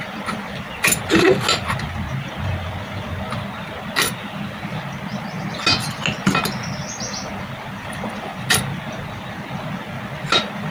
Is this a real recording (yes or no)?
yes